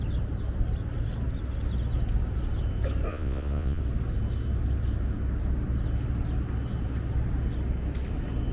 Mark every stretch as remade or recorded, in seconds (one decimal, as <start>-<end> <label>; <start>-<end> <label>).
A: 0.0-3.1 recorded; 3.1-3.8 remade; 3.8-8.5 recorded

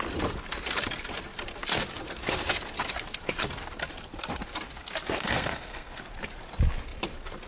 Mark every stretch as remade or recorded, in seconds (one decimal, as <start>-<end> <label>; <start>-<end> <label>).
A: 0.0-5.2 recorded; 5.2-6.0 remade; 6.0-7.5 recorded

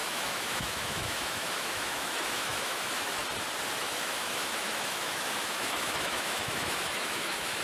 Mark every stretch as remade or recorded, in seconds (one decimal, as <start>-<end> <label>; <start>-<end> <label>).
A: 0.0-3.2 remade; 3.2-3.8 recorded; 3.8-7.6 remade

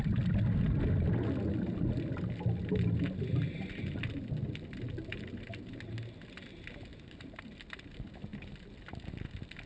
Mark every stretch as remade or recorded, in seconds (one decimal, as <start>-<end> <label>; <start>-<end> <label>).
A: 0.0-6.9 recorded; 6.9-7.4 remade; 7.4-9.7 recorded

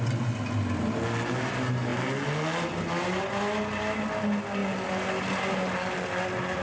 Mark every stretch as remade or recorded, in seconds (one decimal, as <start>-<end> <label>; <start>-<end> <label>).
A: 0.0-6.6 recorded